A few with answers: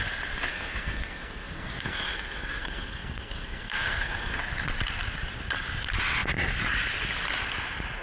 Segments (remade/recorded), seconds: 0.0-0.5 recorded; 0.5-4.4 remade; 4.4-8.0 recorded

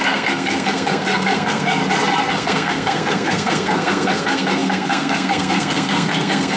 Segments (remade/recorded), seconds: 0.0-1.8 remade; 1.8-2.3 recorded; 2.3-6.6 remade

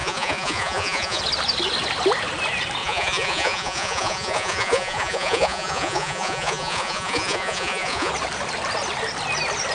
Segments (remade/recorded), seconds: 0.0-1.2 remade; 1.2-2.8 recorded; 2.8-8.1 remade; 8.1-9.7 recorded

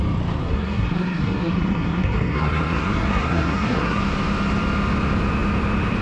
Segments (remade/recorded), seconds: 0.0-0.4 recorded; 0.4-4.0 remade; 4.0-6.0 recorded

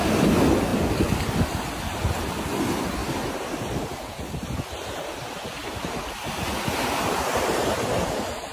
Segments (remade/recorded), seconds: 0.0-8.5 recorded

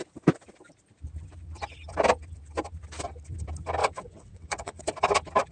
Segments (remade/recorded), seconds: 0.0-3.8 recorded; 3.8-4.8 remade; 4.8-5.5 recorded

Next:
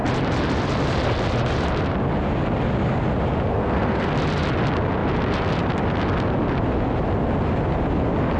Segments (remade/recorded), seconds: 0.0-3.5 recorded; 3.5-4.1 remade; 4.1-8.4 recorded

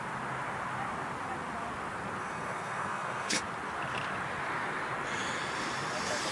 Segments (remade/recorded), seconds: 0.0-2.2 recorded; 2.2-3.4 remade; 3.4-6.3 recorded